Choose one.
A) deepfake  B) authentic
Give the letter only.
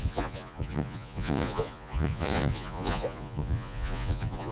A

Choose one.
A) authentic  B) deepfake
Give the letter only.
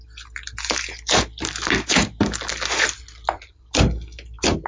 A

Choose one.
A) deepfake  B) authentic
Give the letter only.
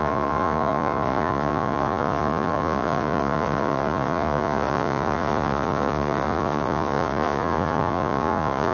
A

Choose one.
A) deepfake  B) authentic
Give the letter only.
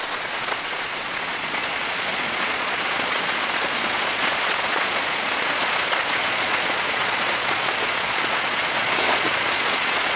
A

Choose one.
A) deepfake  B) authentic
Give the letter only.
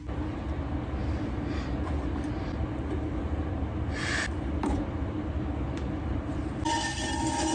B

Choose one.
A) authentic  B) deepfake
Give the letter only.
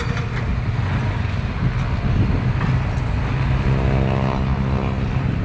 A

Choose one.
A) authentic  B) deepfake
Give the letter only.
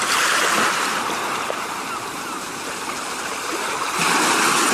A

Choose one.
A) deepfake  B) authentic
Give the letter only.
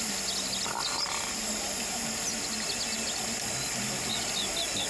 B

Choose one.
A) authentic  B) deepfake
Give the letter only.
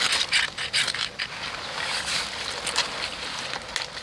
A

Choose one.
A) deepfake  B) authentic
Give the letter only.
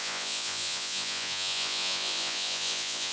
A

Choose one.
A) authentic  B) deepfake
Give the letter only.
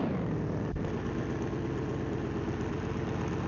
A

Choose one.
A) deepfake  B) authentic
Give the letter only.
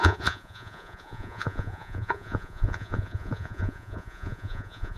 A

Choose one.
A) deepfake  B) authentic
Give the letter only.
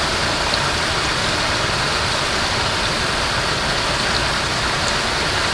B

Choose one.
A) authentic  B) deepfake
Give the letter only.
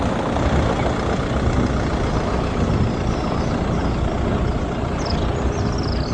A